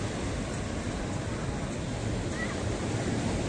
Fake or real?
real